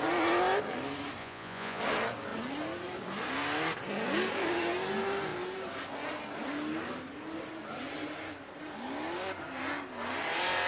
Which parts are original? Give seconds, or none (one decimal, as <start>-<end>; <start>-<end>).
0.0-1.2; 1.8-10.7